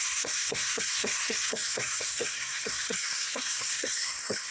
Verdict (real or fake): fake